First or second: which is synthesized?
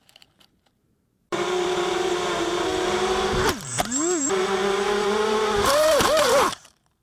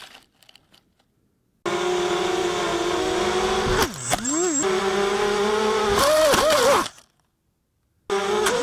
first